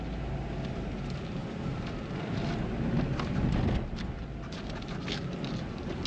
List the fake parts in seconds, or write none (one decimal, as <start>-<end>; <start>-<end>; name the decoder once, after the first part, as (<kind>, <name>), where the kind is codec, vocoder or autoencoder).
1.4-2.6 (vocoder, BigVGAN v2)